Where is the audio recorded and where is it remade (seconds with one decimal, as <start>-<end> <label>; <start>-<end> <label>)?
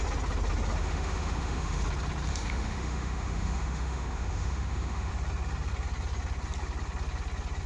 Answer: 0.0-0.8 recorded; 0.8-1.8 remade; 1.8-2.3 recorded; 2.3-5.1 remade; 5.1-7.7 recorded